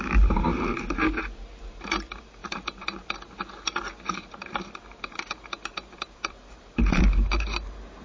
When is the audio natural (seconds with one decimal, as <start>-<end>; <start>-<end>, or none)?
none

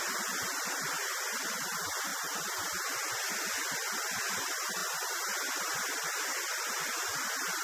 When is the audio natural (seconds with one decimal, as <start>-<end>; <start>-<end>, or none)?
2.1-3.4; 4.8-5.5

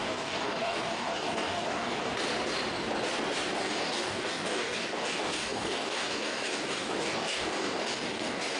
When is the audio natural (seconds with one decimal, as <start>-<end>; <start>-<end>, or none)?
2.1-3.6

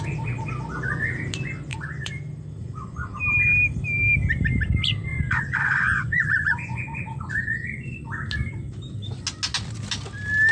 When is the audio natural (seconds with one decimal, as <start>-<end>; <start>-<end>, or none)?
0.0-1.7; 2.2-2.6; 3.2-5.1; 8.1-10.5